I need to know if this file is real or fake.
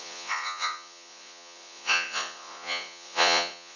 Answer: fake